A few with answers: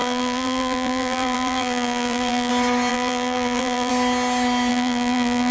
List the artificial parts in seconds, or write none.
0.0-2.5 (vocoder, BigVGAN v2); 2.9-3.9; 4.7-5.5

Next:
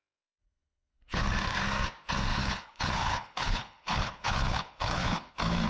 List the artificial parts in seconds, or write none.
0.4-1.2 (codec, HILCodec); 2.3-5.3

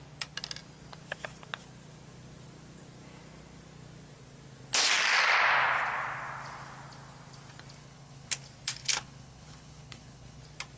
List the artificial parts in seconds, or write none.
7.8-8.3 (codec, HILCodec); 8.8-10.4

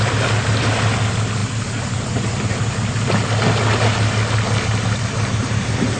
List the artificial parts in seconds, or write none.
none

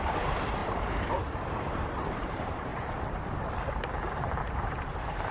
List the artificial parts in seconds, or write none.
0.0-2.7 (vocoder, BigVGAN v2); 4.4-5.3

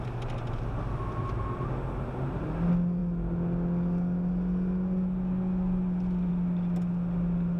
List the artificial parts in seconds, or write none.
none

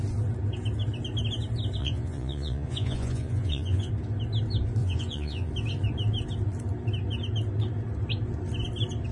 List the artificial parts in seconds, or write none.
1.8-3.9 (vocoder, Vocos); 4.8-5.5

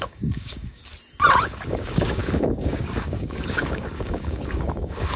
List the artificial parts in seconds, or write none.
0.0-0.8 (codec, DAC); 1.4-5.2